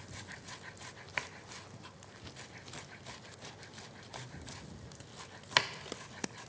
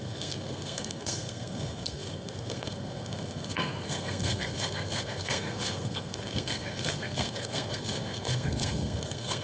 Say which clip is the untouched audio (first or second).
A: first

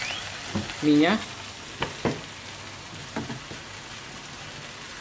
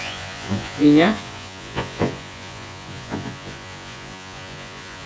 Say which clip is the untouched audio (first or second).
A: first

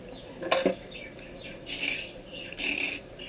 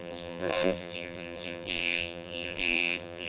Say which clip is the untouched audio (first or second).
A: first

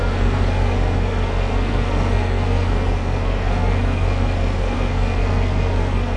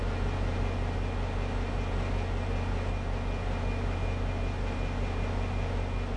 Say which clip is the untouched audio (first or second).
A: second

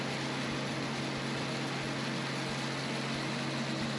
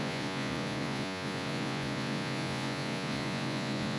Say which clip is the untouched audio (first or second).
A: first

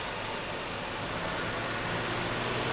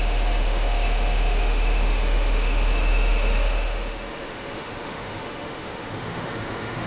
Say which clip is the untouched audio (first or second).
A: first